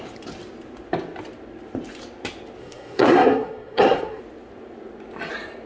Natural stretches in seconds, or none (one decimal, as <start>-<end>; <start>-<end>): 0.0-2.6; 4.2-5.7